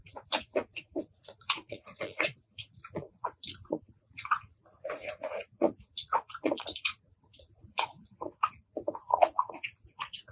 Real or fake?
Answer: fake